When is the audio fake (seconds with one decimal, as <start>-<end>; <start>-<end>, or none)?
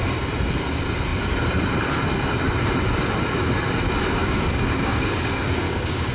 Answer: 4.2-6.1